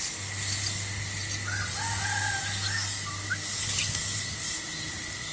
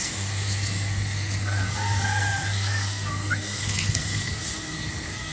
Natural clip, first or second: first